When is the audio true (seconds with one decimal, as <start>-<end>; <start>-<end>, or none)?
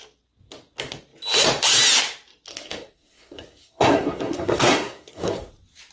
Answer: 0.0-2.5; 5.5-5.9